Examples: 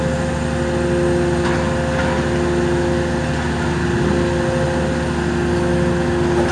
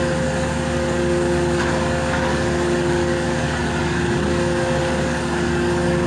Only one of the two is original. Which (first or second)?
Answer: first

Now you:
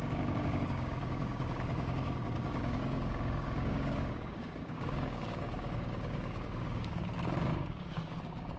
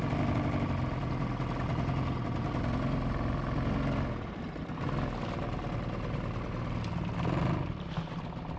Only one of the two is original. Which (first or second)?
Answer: second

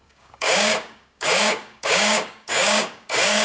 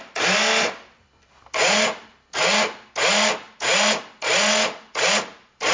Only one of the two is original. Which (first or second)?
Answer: second